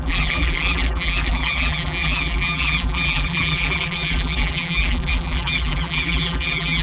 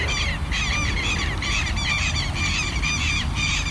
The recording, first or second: second